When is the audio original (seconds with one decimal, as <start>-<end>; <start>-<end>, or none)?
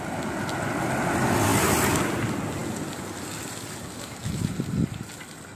0.0-5.5